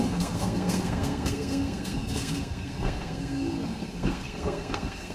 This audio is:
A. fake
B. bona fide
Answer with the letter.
A